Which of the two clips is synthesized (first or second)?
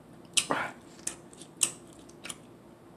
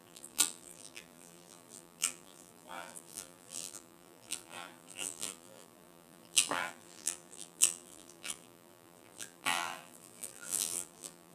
second